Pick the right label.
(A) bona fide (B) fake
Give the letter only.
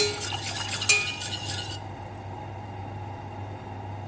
A